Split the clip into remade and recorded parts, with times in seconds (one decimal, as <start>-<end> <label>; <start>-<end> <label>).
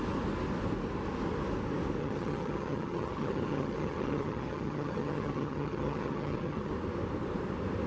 0.0-2.0 recorded; 2.0-6.7 remade; 6.7-7.9 recorded